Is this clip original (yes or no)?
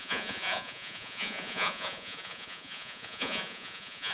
no